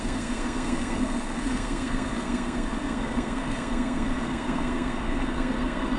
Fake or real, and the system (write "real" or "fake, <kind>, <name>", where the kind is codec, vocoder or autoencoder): fake, codec, SNAC